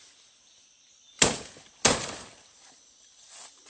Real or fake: real